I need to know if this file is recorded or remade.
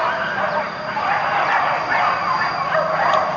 recorded